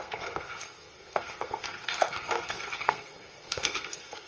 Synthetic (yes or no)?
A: yes